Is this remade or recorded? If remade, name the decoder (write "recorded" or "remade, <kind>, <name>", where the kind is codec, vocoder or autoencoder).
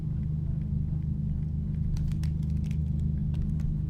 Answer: recorded